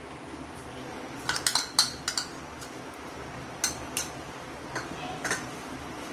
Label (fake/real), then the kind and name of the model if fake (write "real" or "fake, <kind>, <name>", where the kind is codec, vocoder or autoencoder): real